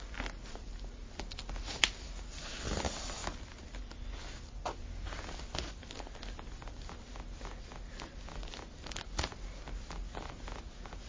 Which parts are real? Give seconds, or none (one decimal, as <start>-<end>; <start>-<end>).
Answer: 0.0-11.1